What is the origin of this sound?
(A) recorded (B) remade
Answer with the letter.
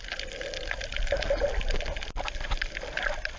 A